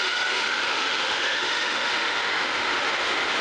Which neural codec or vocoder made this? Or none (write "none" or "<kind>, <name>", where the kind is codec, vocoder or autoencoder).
autoencoder, DAC-VAE